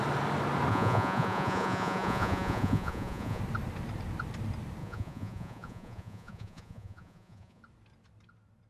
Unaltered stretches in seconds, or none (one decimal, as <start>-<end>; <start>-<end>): 0.0-0.7; 3.4-4.8; 7.6-8.7